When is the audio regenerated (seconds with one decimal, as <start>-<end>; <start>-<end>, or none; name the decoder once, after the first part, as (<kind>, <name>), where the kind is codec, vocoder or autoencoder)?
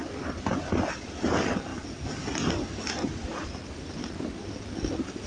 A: none